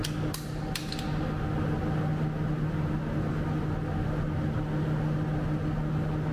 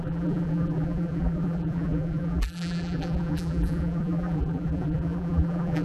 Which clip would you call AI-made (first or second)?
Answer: second